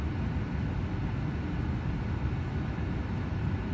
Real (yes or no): yes